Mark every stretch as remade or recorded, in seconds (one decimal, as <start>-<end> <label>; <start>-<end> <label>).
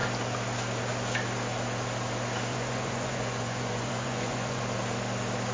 0.0-2.5 recorded; 2.5-4.6 remade; 4.6-5.5 recorded